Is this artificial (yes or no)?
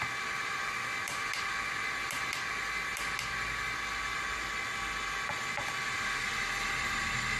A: no